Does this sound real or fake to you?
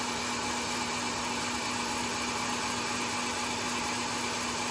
real